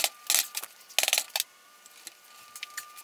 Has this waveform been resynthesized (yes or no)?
no